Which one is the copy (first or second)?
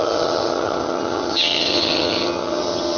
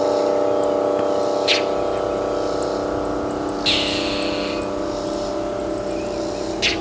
first